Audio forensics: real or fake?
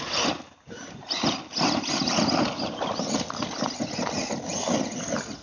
real